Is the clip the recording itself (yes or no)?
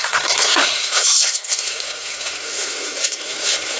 no